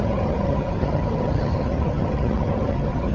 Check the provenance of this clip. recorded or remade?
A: remade